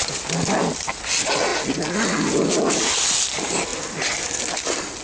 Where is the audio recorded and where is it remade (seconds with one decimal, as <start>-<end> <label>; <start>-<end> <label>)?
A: 0.0-5.0 recorded